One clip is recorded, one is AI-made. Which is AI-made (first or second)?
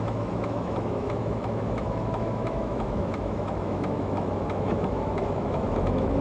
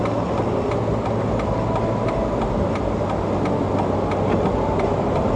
first